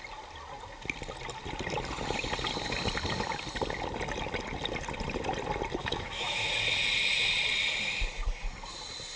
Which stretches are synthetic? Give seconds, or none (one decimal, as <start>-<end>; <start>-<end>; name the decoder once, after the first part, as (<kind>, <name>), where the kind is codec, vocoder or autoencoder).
5.8-6.5 (autoencoder, DAC-VAE)